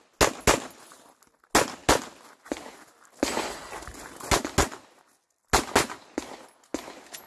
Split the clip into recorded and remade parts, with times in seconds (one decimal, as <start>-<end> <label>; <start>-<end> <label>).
0.0-7.3 recorded